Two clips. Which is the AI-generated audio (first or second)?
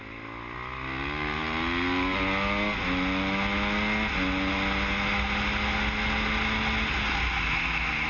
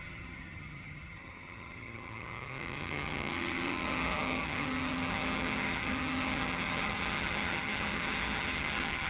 second